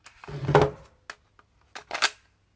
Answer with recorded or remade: recorded